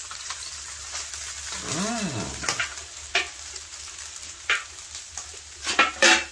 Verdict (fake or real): real